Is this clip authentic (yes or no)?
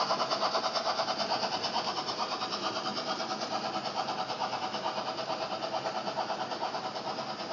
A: yes